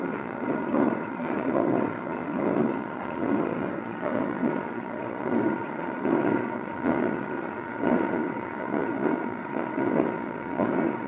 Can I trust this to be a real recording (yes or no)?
no